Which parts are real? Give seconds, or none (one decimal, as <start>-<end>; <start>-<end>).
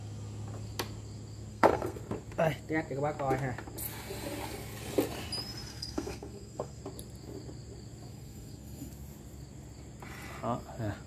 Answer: 0.0-1.5; 2.0-5.7; 6.8-8.1; 8.9-11.1